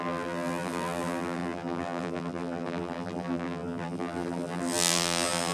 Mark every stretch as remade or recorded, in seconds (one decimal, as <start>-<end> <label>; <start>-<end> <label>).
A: 0.0-5.5 remade